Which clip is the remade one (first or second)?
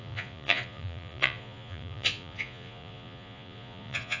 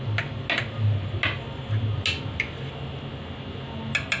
first